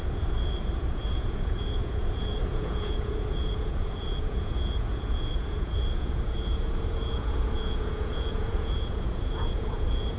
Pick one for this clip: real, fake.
fake